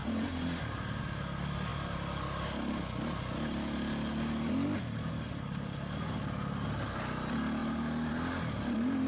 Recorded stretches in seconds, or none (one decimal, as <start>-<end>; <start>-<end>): 0.0-9.1